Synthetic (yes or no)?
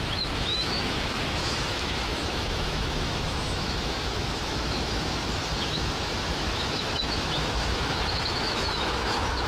yes